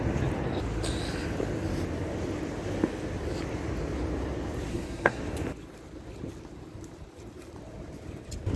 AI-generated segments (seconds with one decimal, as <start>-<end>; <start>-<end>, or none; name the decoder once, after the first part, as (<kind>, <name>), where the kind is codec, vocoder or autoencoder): 4.7-5.2 (codec, SNAC)